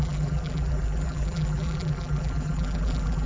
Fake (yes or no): yes